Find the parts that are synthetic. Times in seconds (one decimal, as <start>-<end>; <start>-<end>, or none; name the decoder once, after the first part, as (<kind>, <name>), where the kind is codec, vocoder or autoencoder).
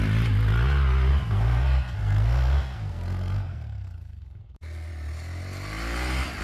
1.1-4.9 (codec, SNAC)